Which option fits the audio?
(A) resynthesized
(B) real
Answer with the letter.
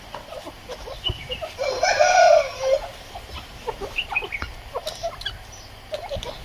A